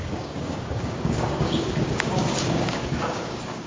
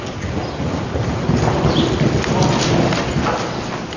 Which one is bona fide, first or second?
second